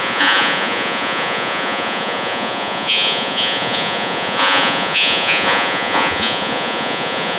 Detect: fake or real fake